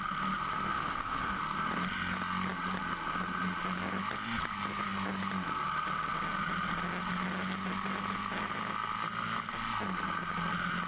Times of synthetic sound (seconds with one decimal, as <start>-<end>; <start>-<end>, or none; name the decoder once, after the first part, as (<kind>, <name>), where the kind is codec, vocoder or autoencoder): 0.7-1.4 (autoencoder, DAC-VAE)